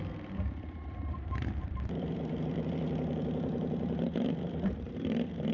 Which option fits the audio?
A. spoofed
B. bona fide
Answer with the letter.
A